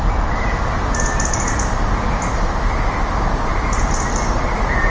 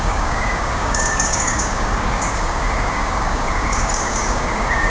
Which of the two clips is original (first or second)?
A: first